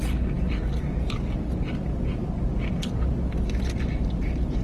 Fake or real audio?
real